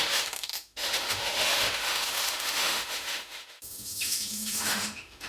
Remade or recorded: remade